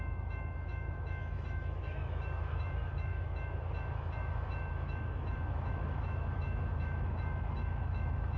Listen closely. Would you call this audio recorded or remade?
remade